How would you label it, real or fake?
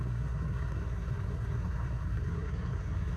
fake